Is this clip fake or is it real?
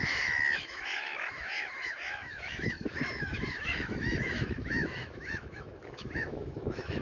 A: fake